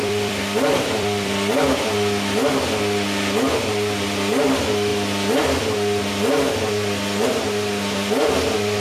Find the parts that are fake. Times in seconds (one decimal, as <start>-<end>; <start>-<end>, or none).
0.0-1.9